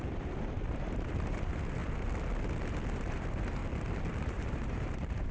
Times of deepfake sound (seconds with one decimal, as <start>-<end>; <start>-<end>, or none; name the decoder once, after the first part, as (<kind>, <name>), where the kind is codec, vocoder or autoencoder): 0.0-1.8 (vocoder, BigVGAN v2); 2.9-3.6; 4.2-5.3